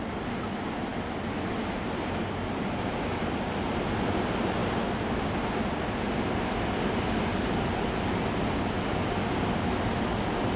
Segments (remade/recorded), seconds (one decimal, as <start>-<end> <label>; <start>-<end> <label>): 0.0-10.6 recorded